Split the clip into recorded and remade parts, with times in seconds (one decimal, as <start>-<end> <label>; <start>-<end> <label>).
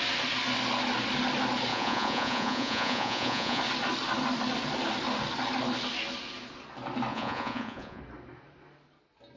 0.0-1.7 recorded; 1.7-3.6 remade; 3.6-7.1 recorded; 7.1-8.0 remade; 8.0-9.4 recorded